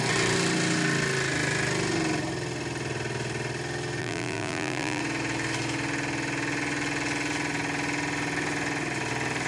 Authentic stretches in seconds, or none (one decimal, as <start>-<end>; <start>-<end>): 0.0-4.0; 5.0-9.5